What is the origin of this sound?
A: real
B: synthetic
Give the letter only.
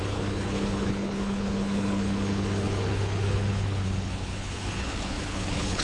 B